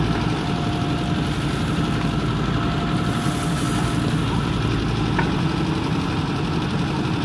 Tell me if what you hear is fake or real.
real